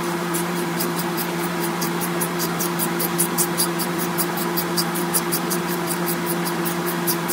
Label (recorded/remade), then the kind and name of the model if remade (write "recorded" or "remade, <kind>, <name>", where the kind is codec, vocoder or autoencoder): remade, vocoder, BigVGAN v2